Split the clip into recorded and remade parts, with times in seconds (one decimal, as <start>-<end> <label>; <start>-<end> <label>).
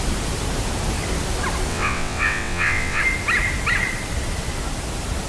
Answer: 0.0-1.7 recorded; 1.7-3.0 remade; 3.0-5.3 recorded